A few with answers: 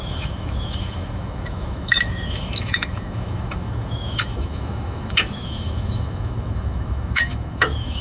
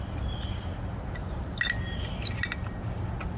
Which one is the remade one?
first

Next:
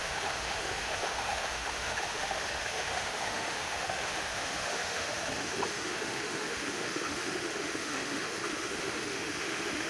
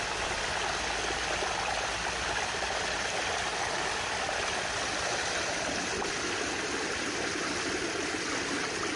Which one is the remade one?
first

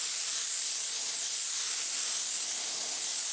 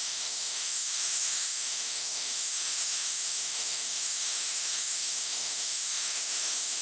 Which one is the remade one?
second